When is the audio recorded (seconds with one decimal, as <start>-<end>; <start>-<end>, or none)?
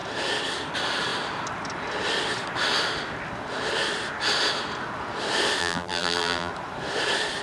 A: 0.0-5.6; 6.5-7.4